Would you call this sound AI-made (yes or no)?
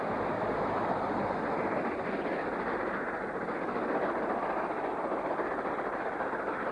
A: no